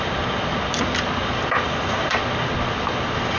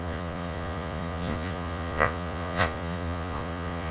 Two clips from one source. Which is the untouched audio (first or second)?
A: first